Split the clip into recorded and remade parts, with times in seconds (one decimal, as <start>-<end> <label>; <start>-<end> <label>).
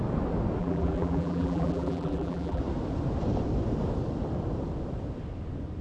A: 0.0-0.6 recorded; 0.6-2.6 remade; 2.6-5.8 recorded